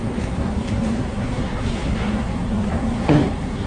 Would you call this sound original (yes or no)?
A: no